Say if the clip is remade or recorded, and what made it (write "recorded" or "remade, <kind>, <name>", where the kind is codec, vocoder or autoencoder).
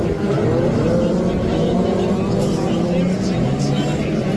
recorded